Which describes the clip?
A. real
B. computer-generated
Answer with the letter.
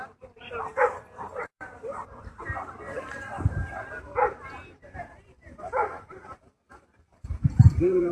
B